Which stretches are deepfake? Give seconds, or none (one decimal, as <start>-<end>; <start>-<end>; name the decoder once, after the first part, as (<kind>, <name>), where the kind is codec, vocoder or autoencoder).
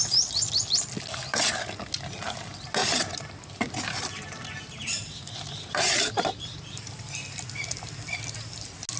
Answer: 2.8-7.0 (vocoder, BigVGAN v2)